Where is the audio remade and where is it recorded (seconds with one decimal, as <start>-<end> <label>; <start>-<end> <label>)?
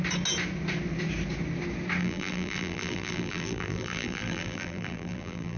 0.0-2.0 recorded; 2.0-5.6 remade